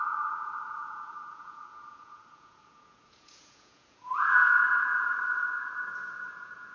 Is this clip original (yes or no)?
no